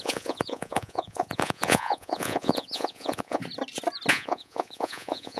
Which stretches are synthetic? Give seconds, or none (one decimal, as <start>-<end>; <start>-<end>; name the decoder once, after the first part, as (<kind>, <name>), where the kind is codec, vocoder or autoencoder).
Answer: 0.0-3.4 (vocoder, Vocos); 4.1-5.4